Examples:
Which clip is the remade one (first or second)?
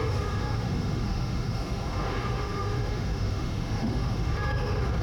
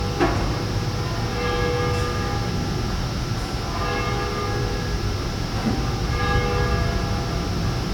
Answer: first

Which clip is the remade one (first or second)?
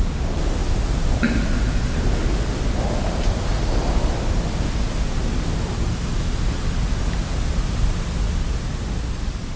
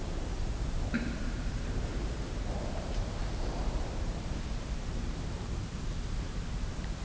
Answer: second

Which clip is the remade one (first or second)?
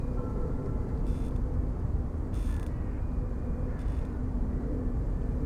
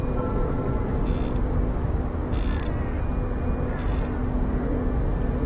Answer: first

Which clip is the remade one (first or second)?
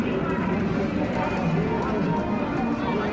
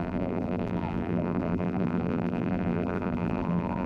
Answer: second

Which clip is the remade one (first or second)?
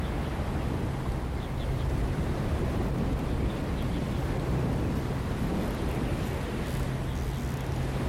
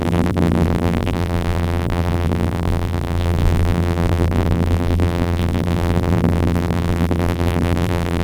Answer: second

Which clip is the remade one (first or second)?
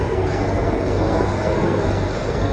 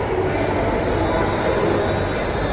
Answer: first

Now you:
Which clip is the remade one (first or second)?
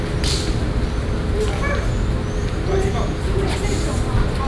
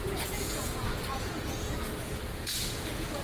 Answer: second